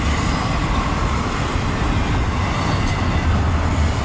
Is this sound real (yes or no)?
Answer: yes